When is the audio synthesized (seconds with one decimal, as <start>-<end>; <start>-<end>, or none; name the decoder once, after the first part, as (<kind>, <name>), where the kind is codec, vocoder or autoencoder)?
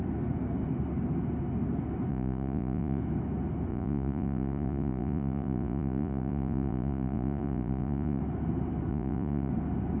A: 2.1-3.0 (vocoder, Vocos); 3.7-8.2; 8.9-9.5